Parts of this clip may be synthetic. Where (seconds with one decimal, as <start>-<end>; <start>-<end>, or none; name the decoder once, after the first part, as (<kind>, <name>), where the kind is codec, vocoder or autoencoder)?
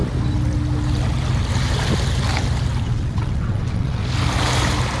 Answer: 2.8-4.0 (vocoder, WaveNeXt)